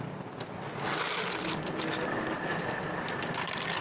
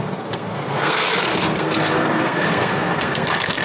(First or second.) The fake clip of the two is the second